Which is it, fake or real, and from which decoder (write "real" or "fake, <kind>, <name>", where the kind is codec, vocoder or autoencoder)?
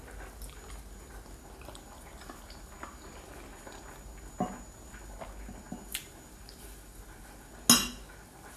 real